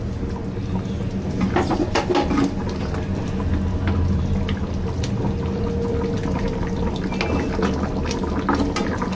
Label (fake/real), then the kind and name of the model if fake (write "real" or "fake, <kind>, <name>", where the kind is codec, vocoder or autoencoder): real